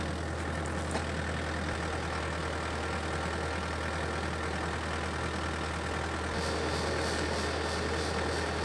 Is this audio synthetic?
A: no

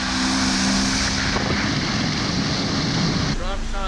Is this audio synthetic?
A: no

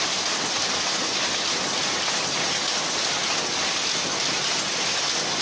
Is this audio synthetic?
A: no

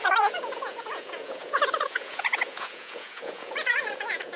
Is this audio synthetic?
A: yes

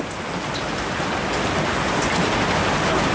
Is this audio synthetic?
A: no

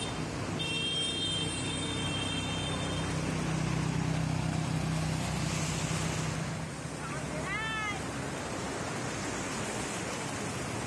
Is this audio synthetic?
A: no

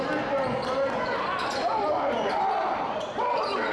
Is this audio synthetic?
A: no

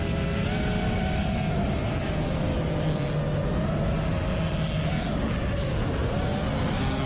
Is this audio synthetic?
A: no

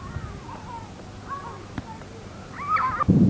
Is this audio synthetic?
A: no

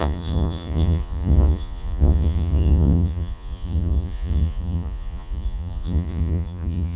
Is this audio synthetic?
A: yes